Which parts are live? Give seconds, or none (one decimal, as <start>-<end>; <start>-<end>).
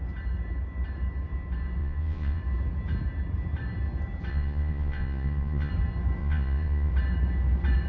0.0-1.8; 2.4-4.3; 5.7-6.2; 6.9-7.9